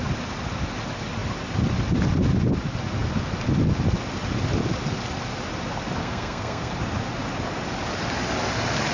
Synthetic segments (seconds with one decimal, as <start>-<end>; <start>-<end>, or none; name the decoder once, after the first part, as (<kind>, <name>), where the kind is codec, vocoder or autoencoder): 6.0-6.7 (codec, SNAC)